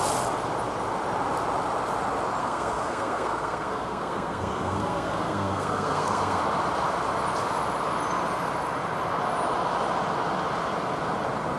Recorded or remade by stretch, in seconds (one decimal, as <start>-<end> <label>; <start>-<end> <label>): 0.0-2.4 recorded; 2.4-6.4 remade; 6.4-11.6 recorded